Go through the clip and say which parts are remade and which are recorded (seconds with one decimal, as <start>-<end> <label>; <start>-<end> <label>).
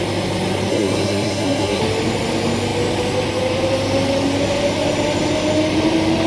0.0-0.7 recorded; 0.7-1.8 remade; 1.8-6.3 recorded